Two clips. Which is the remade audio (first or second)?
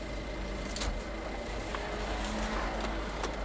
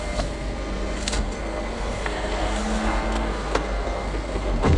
second